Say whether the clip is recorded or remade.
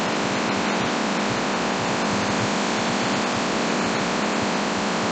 recorded